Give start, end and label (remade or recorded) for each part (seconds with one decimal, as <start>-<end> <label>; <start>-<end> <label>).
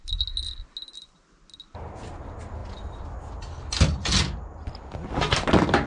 0.0-5.9 recorded